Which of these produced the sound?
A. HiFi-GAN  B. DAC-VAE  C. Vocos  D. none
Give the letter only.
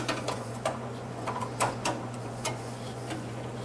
C